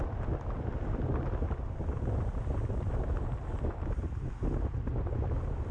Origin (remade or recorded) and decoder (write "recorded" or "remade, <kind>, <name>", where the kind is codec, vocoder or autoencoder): recorded